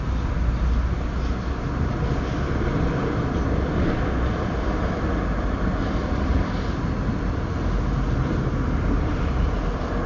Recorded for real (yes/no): yes